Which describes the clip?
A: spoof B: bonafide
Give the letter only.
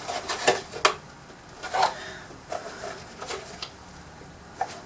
B